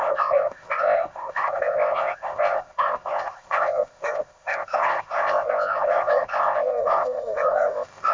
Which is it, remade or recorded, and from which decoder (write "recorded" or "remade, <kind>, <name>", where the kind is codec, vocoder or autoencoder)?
remade, codec, ZipCodec